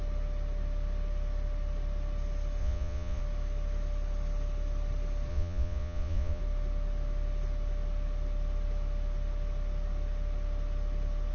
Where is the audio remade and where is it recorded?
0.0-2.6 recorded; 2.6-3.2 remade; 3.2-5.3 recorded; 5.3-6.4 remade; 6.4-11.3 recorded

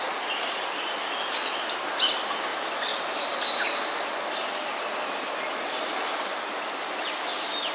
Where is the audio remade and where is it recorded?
0.0-7.7 recorded